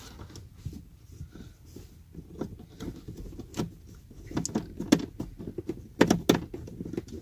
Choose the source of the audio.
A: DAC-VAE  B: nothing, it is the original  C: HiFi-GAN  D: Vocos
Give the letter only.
B